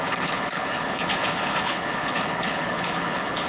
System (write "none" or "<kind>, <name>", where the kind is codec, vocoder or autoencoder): codec, HILCodec